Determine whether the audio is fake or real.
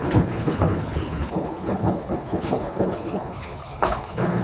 fake